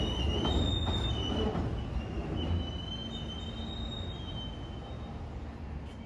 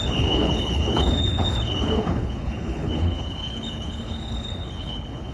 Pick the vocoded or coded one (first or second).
second